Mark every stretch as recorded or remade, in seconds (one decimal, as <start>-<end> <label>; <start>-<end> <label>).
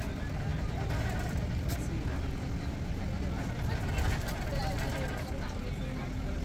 0.0-6.4 recorded